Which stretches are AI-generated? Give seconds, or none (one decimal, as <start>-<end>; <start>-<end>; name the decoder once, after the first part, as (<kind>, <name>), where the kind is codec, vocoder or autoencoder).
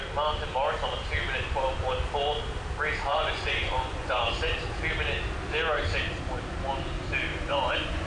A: 3.1-4.2 (vocoder, Vocos); 7.3-8.1